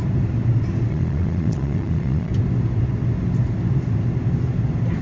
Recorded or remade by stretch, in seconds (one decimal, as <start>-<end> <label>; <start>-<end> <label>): 0.0-0.9 recorded; 0.9-2.3 remade; 2.3-5.0 recorded